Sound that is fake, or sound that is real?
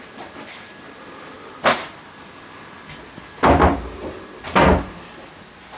real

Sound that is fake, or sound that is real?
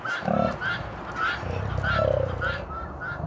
real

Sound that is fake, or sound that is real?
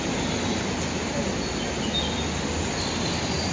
real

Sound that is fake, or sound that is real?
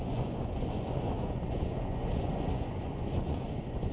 fake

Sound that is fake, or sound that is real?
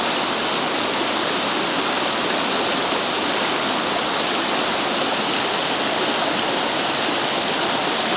real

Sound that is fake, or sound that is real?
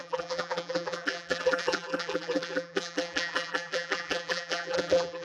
fake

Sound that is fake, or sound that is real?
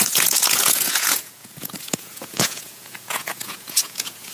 fake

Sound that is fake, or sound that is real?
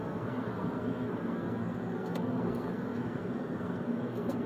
fake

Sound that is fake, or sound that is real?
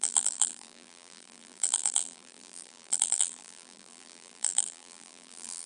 fake